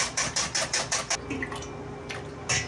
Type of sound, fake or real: real